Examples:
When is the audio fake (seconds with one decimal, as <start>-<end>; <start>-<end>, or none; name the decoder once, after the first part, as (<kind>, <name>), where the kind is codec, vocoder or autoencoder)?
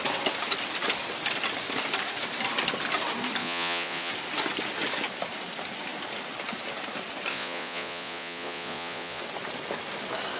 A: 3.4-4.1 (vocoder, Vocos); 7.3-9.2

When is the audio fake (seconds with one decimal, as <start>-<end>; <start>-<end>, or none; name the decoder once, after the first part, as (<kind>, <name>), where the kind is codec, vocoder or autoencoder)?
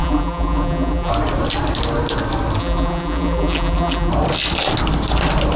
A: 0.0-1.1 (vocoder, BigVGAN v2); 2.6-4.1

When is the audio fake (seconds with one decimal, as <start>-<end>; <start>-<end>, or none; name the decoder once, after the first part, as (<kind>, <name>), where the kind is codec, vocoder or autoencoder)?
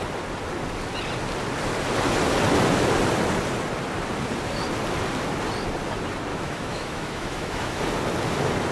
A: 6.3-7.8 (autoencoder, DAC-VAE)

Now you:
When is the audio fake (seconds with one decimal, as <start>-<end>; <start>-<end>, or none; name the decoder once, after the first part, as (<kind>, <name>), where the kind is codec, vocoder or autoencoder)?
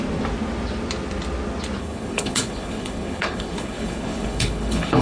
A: 1.8-5.0 (codec, HILCodec)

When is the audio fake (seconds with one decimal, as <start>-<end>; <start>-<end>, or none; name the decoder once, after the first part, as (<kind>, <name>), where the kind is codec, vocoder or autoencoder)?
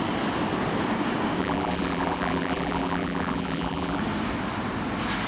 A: 1.4-4.0 (vocoder, BigVGAN v2)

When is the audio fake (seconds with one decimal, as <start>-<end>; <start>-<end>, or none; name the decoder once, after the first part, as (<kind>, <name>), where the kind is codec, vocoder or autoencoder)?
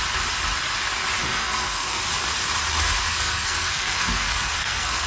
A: 1.2-2.0 (codec, SNAC); 3.0-5.1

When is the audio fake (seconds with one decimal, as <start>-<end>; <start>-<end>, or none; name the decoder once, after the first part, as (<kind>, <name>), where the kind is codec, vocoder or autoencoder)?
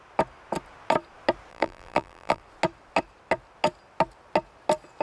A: 1.5-2.4 (vocoder, BigVGAN v2)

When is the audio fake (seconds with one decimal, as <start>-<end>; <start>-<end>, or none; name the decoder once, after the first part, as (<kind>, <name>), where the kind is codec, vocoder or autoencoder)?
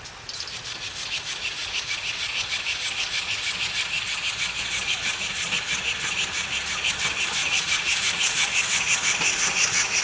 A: 7.4-8.5 (vocoder, Vocos)